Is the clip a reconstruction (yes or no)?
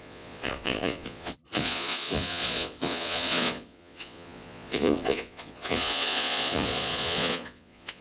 yes